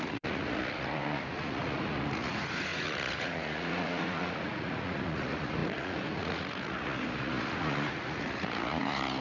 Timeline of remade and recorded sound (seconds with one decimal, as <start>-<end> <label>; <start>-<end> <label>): 0.0-9.2 remade